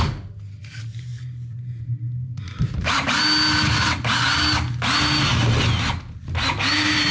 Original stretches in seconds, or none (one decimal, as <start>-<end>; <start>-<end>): 0.0-1.1; 3.1-7.1